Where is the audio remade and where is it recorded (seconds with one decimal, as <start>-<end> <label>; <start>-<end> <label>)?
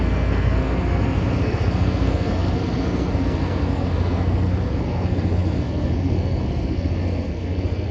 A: 0.0-7.9 remade